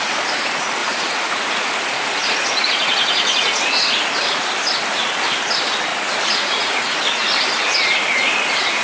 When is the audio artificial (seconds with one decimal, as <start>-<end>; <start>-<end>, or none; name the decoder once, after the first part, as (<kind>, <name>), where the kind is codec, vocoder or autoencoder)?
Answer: 0.8-3.6 (vocoder, Vocos); 5.9-7.0